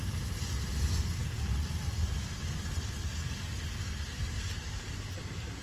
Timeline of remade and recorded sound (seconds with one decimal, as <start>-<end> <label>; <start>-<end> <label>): 0.0-5.6 recorded